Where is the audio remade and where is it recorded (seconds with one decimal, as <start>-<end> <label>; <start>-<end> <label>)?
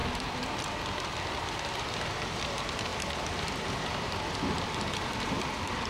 0.0-2.4 recorded; 2.4-5.9 remade